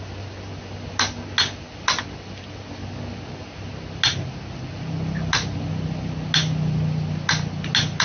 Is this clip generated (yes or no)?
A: no